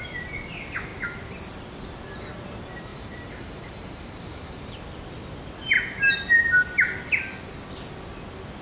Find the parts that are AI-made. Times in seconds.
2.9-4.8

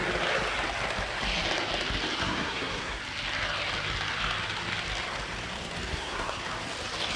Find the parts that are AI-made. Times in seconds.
2.2-3.0; 5.9-6.4

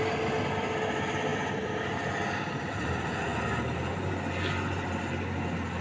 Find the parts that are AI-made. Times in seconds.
1.3-2.1

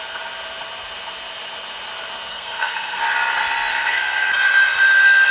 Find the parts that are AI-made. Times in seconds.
2.3-3.0; 3.7-4.3

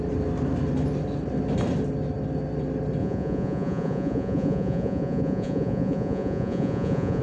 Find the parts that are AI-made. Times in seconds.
3.0-7.2

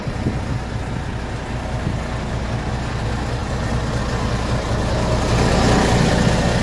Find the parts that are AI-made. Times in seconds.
none

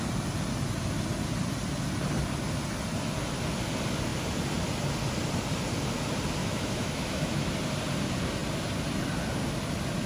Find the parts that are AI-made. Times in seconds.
6.4-7.5